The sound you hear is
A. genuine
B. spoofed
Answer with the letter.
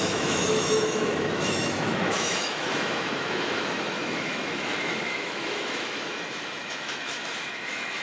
B